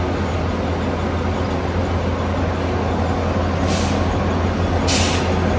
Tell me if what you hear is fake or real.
real